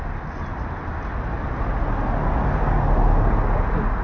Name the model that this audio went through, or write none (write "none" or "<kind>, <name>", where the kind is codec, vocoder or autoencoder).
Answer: none